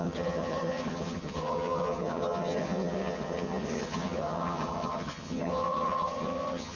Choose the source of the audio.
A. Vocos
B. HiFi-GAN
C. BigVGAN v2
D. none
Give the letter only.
B